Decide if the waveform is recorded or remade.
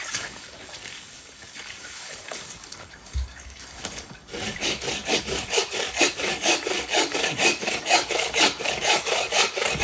remade